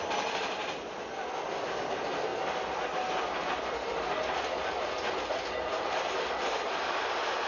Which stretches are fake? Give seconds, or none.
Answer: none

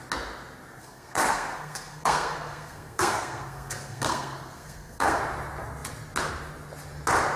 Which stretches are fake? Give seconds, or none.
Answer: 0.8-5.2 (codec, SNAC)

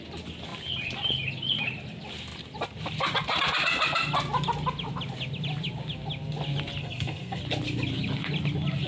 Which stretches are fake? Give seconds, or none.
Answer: 6.8-7.4 (codec, SNAC)

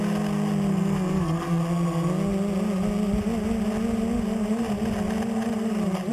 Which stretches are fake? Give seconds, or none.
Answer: 0.7-1.6 (codec, SNAC)